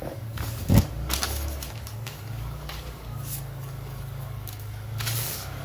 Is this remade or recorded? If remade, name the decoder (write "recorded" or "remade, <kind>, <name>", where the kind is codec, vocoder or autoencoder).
remade, codec, DAC